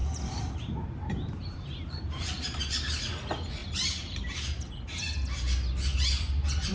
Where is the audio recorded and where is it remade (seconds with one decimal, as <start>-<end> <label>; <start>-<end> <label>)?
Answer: 0.0-3.1 remade; 3.1-3.6 recorded; 3.6-4.7 remade; 4.7-6.7 recorded